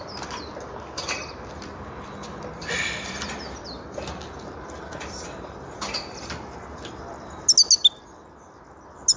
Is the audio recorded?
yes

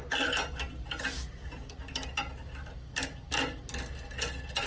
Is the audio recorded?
yes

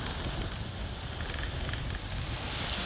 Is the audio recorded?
yes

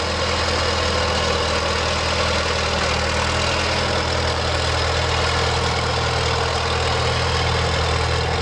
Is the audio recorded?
yes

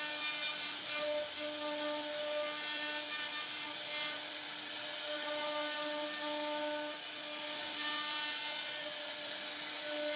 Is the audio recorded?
yes